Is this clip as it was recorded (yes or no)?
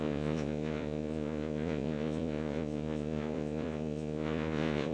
no